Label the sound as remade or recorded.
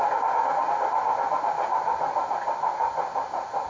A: recorded